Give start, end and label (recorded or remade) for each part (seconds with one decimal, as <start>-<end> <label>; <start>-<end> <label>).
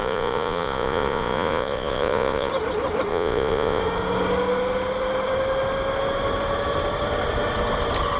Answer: 0.0-2.5 remade; 2.5-3.1 recorded; 3.1-3.8 remade; 3.8-8.2 recorded